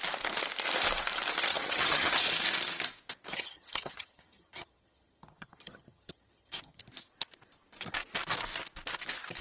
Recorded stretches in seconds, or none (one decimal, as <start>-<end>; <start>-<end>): 0.0-1.5; 2.2-3.3; 6.8-9.4